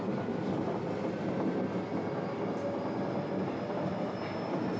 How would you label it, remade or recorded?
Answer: recorded